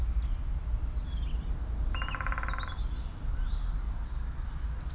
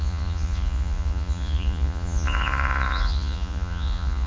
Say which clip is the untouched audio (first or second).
first